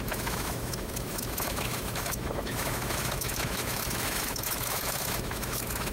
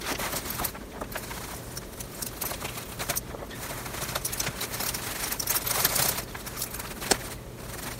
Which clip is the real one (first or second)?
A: second